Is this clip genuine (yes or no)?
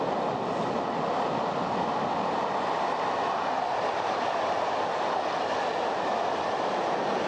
yes